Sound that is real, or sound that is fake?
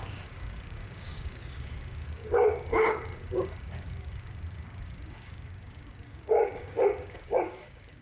fake